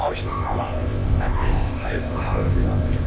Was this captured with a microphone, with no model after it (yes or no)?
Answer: no